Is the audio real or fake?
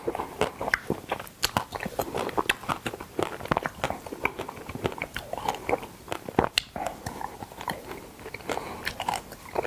real